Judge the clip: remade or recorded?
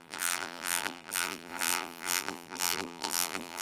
remade